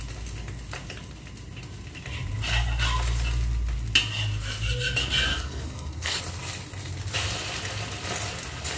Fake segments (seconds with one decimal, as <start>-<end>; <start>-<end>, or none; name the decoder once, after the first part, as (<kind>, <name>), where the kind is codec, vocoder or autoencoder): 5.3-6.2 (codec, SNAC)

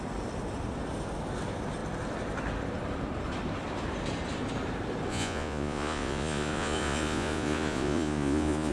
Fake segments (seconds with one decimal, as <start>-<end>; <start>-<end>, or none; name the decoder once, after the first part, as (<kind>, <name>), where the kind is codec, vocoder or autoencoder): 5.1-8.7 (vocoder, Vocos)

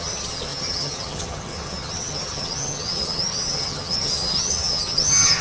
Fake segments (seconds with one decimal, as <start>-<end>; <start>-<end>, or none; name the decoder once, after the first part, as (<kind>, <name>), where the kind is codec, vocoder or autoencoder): 0.0-5.4 (vocoder, HiFi-GAN)

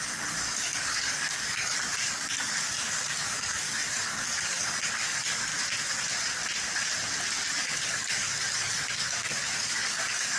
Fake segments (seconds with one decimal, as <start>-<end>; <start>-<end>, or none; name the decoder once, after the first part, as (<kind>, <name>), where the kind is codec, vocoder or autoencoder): 0.0-5.5 (codec, DAC); 7.5-10.4

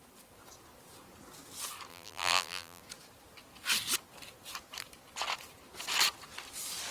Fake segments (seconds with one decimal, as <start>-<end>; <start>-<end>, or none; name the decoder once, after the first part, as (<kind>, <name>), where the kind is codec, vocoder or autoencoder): 1.9-2.8 (vocoder, BigVGAN v2)

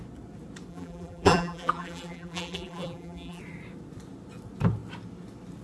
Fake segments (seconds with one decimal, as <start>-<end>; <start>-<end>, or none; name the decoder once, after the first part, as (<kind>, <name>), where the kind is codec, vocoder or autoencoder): 0.7-3.4 (vocoder, BigVGAN v2)